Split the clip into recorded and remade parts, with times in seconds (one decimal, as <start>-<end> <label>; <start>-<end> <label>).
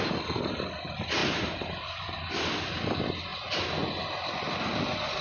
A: 0.0-1.2 recorded; 1.2-2.3 remade; 2.3-5.2 recorded